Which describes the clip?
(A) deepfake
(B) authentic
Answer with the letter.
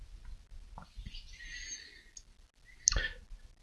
B